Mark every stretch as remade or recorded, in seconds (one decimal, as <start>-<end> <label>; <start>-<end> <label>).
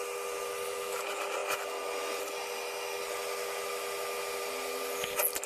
0.0-5.5 recorded